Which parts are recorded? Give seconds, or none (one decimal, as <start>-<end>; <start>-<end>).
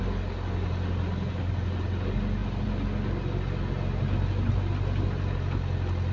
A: 0.0-6.1